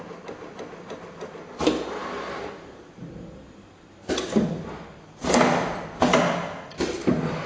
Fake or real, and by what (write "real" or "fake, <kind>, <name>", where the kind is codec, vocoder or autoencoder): real